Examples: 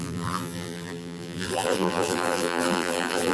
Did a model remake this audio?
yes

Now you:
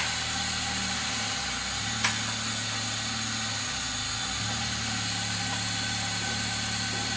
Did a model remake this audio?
no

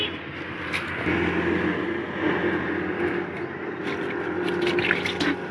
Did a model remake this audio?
no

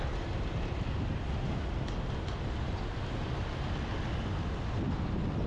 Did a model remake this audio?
no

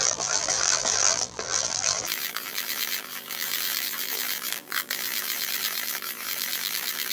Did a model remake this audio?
yes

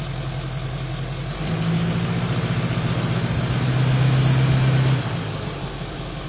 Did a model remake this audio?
no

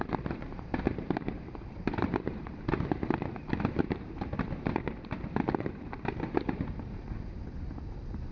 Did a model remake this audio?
yes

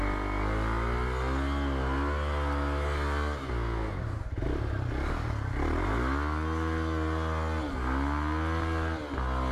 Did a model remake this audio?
no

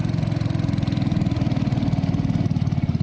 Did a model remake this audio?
no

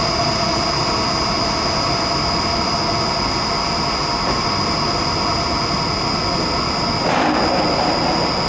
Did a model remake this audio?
no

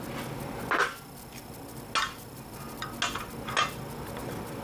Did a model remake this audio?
no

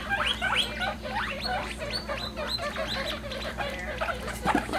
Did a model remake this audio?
yes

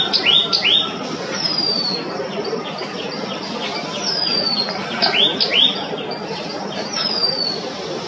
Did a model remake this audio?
no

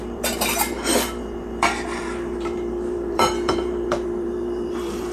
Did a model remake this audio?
yes